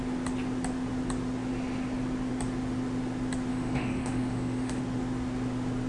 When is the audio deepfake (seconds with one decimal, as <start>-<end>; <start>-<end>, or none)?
3.5-4.8